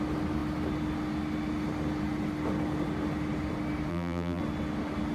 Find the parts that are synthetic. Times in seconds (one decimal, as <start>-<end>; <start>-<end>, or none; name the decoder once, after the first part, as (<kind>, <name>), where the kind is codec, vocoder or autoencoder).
3.9-4.4 (vocoder, BigVGAN v2)